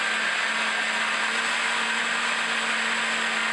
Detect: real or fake real